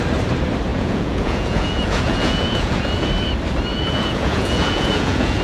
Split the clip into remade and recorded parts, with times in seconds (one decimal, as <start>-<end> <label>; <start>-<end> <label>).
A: 0.0-0.7 recorded; 0.7-3.1 remade; 3.1-3.7 recorded; 3.7-5.4 remade